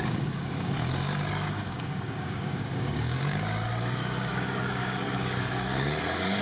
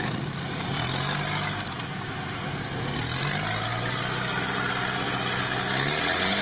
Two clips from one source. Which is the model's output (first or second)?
first